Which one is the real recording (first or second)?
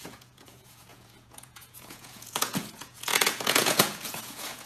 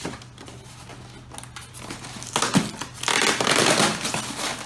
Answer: second